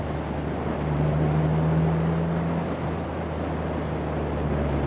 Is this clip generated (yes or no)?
no